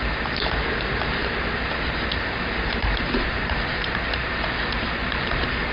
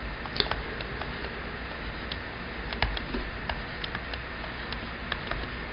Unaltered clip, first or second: second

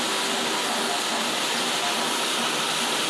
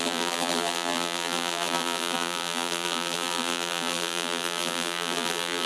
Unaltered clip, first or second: first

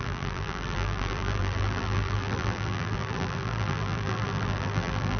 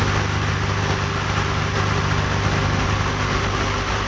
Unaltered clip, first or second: second